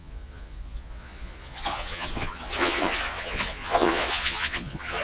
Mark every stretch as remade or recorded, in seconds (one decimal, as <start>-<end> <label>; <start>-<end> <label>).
0.0-5.0 remade